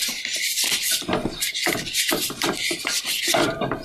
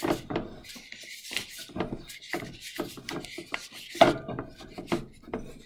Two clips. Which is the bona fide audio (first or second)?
second